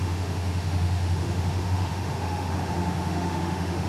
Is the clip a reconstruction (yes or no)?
yes